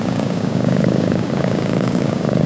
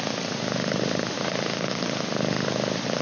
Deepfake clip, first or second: first